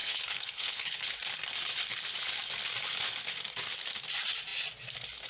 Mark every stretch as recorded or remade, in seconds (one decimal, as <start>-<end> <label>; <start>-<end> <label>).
0.0-1.1 remade; 1.1-5.3 recorded